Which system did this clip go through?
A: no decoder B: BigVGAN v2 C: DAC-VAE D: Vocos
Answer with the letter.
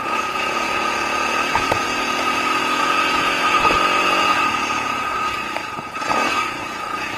D